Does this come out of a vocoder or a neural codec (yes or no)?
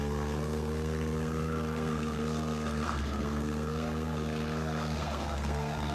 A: yes